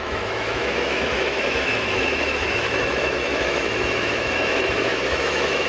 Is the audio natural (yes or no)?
no